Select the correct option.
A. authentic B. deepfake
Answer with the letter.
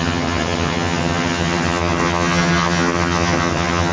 B